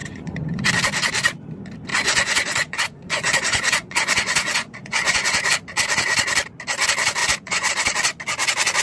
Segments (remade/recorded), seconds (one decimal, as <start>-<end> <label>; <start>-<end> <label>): 0.0-0.7 remade; 0.7-1.9 recorded; 1.9-5.5 remade; 5.5-7.2 recorded; 7.2-7.7 remade; 7.7-8.8 recorded

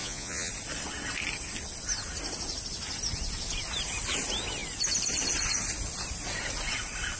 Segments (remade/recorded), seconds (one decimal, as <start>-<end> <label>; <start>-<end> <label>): 0.0-0.5 remade; 0.5-7.2 recorded

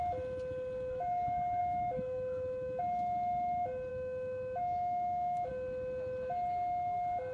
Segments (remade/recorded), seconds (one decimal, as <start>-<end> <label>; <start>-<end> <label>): 0.0-1.6 recorded; 1.6-2.8 remade; 2.8-3.9 recorded; 3.9-5.5 remade; 5.5-7.3 recorded

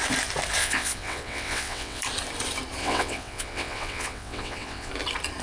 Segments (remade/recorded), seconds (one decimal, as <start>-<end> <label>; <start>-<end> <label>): 0.0-0.6 recorded; 0.6-2.0 remade; 2.0-2.8 recorded; 2.8-4.9 remade; 4.9-5.4 recorded

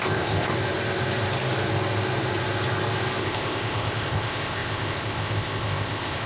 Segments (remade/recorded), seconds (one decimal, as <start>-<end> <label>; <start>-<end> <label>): 0.0-0.5 remade; 0.5-3.2 recorded; 3.2-6.3 remade

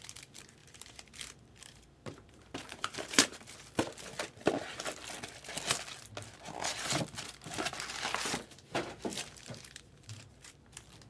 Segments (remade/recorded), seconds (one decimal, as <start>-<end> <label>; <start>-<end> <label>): 0.0-0.6 recorded; 0.6-3.4 remade; 3.4-9.1 recorded; 9.1-10.7 remade; 10.7-11.1 recorded

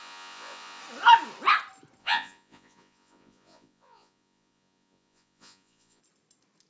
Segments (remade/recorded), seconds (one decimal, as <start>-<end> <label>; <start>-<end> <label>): 0.0-0.8 remade; 0.8-2.0 recorded; 2.0-6.0 remade; 6.0-6.7 recorded